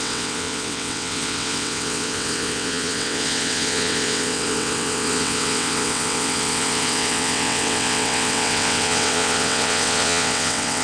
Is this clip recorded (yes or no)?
no